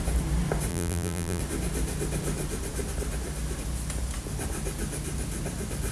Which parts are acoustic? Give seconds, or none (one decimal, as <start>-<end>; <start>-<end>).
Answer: 0.0-0.7; 1.4-5.9